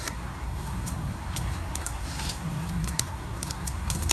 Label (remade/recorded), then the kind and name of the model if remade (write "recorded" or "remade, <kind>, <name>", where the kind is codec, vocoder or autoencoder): remade, codec, SNAC